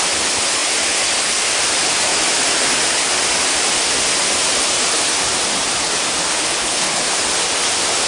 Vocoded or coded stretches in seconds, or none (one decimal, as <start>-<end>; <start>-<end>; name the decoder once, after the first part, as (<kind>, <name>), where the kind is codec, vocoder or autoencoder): 6.3-7.1 (codec, HILCodec)